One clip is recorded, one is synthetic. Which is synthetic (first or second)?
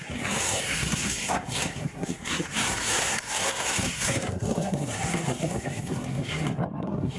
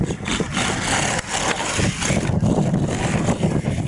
first